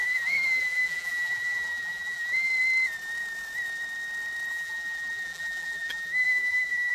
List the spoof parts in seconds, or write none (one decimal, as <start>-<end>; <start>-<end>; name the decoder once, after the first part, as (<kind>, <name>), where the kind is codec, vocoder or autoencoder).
0.0-2.5 (vocoder, BigVGAN v2); 4.5-6.9